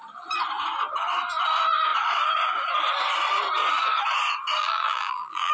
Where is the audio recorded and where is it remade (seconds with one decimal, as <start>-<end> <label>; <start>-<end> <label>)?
0.0-4.6 recorded; 4.6-5.5 remade